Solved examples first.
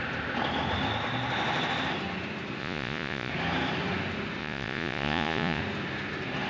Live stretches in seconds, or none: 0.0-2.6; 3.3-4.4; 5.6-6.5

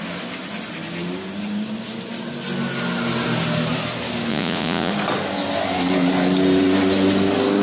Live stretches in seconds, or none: 0.0-4.3; 4.9-7.6

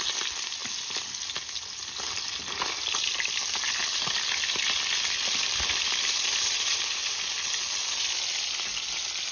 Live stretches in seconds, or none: 0.0-9.3